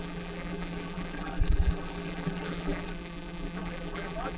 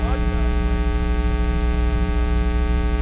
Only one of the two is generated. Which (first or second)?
first